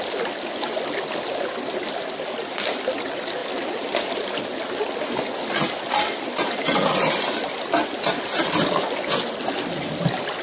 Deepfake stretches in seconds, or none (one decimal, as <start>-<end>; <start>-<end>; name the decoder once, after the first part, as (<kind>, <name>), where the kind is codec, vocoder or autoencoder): none